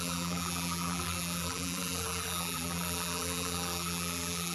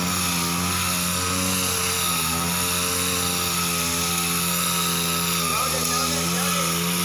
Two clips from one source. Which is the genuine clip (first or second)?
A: second